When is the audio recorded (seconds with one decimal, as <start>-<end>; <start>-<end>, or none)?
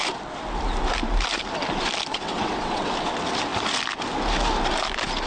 0.0-2.1; 2.9-5.3